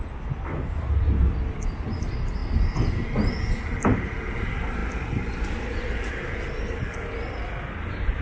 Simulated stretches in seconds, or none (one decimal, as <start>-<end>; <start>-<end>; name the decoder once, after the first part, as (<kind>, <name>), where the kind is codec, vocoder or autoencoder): none